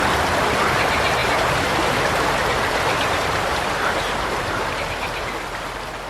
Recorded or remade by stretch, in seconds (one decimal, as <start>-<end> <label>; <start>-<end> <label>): 0.0-1.2 recorded; 1.2-4.9 remade; 4.9-6.1 recorded